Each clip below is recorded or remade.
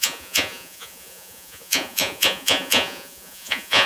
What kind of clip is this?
remade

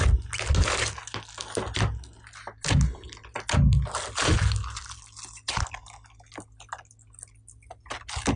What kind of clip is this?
recorded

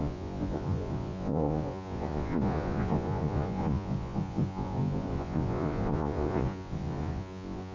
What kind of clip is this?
remade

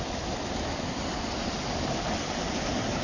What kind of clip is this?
recorded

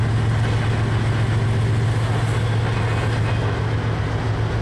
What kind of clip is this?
recorded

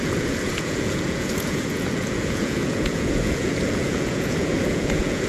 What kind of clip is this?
remade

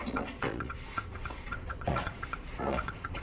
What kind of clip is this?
remade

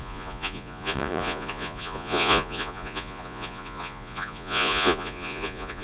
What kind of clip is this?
remade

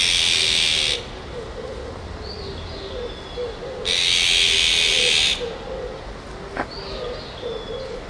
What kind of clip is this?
recorded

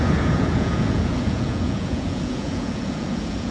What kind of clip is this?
remade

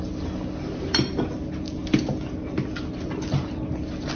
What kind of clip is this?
recorded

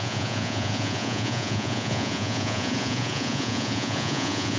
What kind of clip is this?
remade